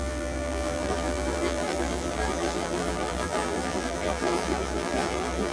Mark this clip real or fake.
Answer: fake